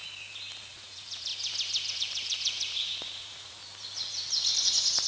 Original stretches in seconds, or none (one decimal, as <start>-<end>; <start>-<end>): 0.0-0.6; 1.3-1.9; 3.6-4.6